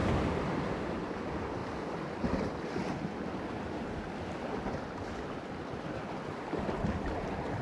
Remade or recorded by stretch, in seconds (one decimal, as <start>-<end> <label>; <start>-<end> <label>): 0.0-7.6 recorded